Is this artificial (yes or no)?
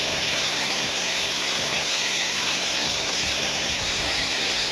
yes